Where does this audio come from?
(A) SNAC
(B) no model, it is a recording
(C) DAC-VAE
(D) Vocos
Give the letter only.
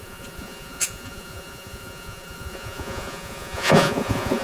D